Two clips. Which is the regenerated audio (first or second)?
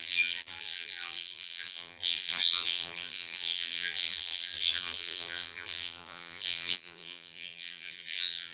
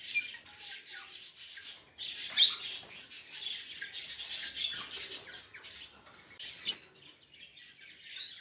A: first